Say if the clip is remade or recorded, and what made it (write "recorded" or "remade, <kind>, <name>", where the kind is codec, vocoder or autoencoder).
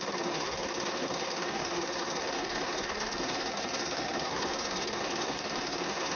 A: remade, codec, SNAC